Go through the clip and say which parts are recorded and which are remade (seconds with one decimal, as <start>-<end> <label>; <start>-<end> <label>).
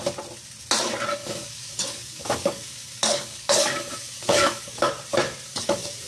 0.0-1.2 recorded; 1.2-4.9 remade; 4.9-5.5 recorded; 5.5-6.1 remade